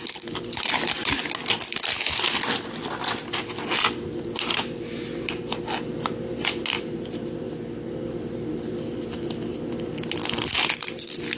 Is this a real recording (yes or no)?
yes